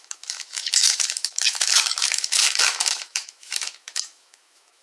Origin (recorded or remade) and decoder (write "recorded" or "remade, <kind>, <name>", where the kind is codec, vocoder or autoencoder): remade, autoencoder, DAC-VAE